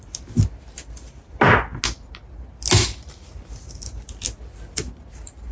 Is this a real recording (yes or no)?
yes